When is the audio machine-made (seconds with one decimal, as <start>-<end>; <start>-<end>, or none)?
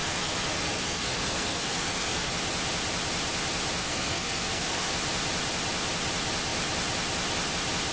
0.0-2.3; 3.8-4.9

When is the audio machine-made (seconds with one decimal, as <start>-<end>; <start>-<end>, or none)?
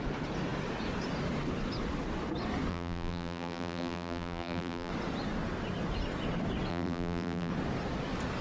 2.7-4.9; 6.7-7.5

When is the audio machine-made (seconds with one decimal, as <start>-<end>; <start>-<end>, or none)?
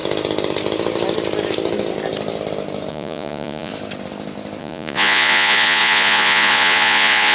2.9-3.7; 4.6-7.3